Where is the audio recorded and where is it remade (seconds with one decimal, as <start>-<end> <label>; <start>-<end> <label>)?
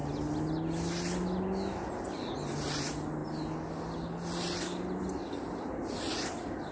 0.0-6.7 recorded